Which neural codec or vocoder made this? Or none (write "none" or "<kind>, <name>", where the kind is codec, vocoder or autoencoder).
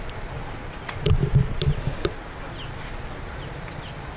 vocoder, BigVGAN v2